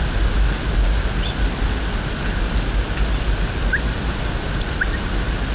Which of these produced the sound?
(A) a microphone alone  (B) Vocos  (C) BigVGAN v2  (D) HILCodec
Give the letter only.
A